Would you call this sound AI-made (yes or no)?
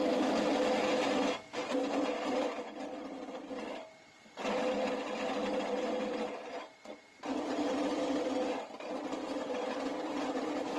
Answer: no